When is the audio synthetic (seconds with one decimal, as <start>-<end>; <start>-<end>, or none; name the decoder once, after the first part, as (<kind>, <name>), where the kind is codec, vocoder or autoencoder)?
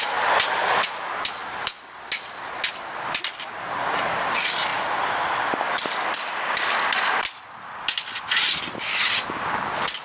none